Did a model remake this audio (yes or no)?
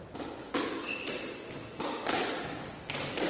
no